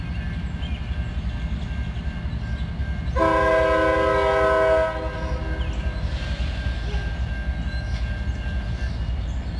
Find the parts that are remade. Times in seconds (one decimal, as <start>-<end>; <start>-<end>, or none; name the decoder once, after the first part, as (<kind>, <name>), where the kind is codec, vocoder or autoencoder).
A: none